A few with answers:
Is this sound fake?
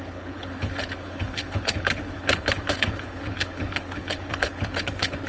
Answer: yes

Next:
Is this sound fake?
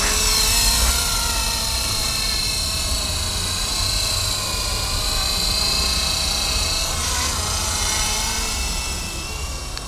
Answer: no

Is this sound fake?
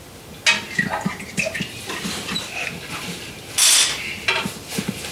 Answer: no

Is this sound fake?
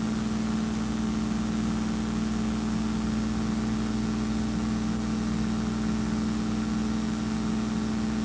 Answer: no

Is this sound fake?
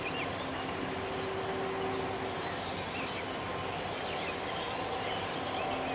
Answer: no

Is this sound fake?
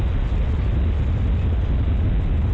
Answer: no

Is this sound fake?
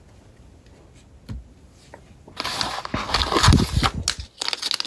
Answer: no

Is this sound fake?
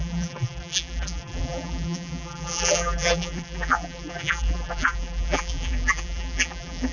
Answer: yes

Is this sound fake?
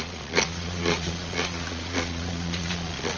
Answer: yes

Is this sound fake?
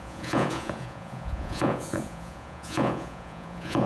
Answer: yes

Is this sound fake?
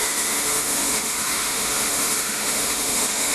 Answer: yes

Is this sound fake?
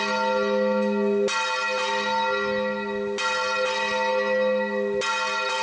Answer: no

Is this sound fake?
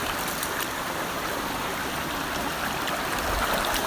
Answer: yes